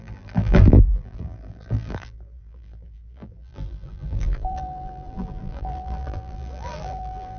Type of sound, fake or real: fake